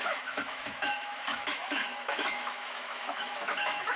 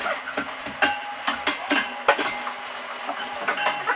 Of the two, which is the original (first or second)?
second